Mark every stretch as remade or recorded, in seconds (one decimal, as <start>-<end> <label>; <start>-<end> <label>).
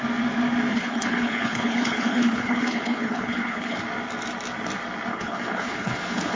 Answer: 0.0-0.7 recorded; 0.7-3.8 remade; 3.8-5.1 recorded; 5.1-6.4 remade